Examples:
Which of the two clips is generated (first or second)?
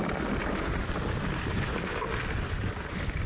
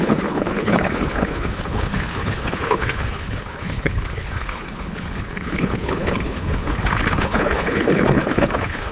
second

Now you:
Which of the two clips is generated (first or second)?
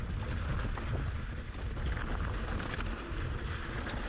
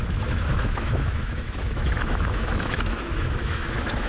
second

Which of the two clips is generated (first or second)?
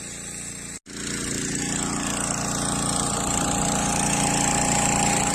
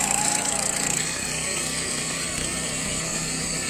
second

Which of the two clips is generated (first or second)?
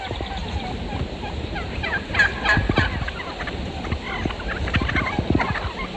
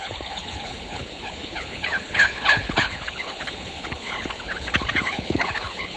second